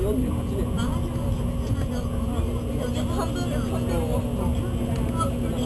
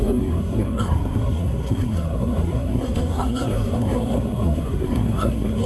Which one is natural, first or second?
first